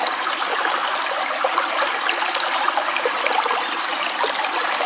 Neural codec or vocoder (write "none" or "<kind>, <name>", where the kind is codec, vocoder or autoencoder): vocoder, BigVGAN v2